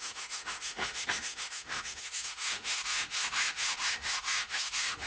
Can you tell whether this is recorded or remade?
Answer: remade